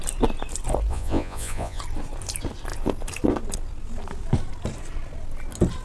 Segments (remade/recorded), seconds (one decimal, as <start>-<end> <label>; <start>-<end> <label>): 0.0-0.9 recorded; 0.9-1.8 remade; 1.8-5.8 recorded